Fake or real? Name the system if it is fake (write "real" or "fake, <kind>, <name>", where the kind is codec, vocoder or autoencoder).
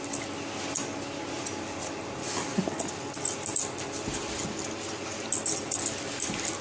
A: real